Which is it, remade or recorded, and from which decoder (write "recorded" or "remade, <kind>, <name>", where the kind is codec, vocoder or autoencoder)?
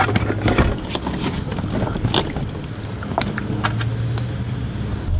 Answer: recorded